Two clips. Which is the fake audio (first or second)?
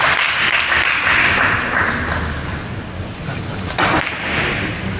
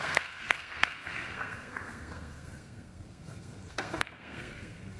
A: second